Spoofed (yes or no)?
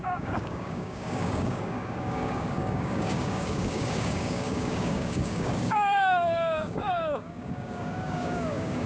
yes